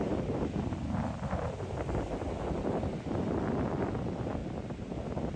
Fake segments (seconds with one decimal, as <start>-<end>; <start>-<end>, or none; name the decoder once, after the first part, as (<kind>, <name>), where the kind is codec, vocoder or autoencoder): none